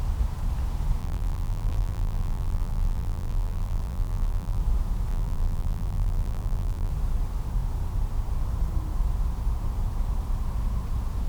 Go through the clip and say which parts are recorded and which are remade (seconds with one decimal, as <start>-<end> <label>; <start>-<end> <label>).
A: 0.0-1.0 recorded; 1.0-4.6 remade; 4.6-5.1 recorded; 5.1-6.9 remade; 6.9-11.3 recorded